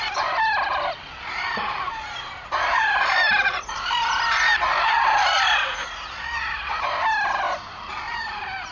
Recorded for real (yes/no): yes